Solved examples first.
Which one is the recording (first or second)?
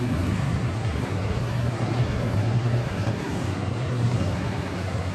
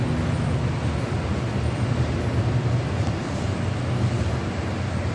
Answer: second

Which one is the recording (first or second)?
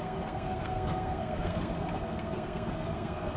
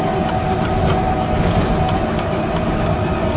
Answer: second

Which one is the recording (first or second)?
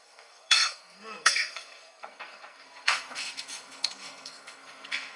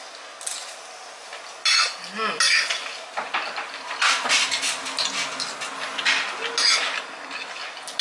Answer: second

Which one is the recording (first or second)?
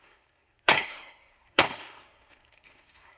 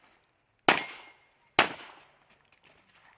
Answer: second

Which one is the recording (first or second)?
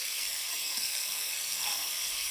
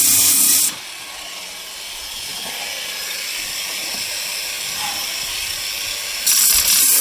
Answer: second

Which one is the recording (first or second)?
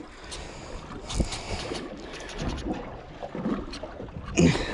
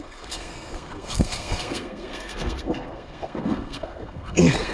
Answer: first